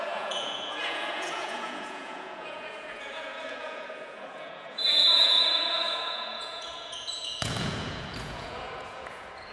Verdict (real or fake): fake